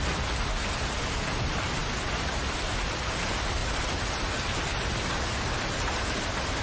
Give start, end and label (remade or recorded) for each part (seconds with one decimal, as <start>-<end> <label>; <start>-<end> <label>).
0.0-6.6 recorded

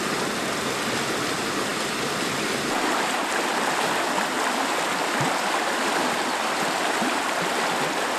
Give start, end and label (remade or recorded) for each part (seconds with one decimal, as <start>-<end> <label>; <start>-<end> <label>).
0.0-8.2 recorded

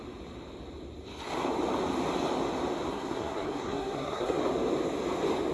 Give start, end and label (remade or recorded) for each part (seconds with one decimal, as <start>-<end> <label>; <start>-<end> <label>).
0.0-2.9 recorded; 2.9-4.4 remade; 4.4-5.5 recorded

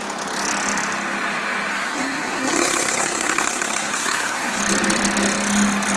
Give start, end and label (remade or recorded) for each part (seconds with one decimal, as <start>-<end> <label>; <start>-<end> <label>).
0.0-1.7 recorded; 1.7-4.6 remade; 4.6-6.0 recorded

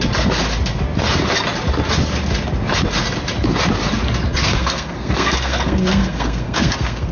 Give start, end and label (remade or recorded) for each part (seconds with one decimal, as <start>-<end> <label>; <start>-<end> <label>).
0.0-4.3 recorded; 4.3-7.1 remade

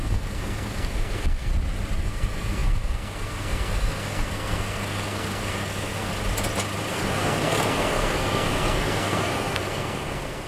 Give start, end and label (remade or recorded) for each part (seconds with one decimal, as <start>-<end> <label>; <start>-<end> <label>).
0.0-1.5 remade; 1.5-2.0 recorded; 2.0-6.1 remade; 6.1-6.9 recorded; 6.9-10.5 remade